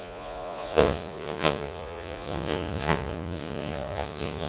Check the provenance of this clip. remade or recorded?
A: remade